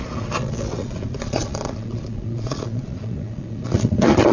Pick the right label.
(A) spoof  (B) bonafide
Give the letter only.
A